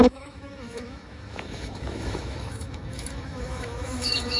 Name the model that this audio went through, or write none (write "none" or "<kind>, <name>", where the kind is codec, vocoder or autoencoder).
autoencoder, DAC-VAE